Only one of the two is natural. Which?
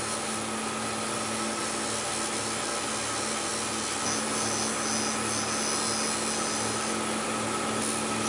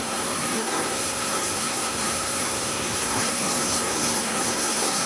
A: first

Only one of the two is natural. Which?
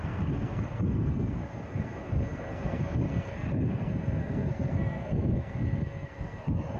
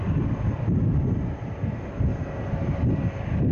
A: second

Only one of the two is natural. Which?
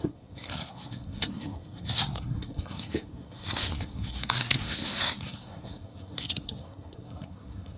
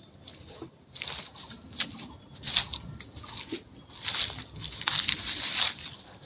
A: second